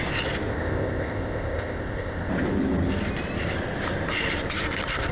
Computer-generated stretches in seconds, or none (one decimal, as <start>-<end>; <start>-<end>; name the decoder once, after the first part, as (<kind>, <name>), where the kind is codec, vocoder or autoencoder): 0.5-2.3 (codec, ZipCodec)